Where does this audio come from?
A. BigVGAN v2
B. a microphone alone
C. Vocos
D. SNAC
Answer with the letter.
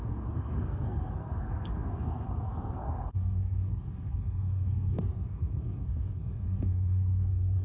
D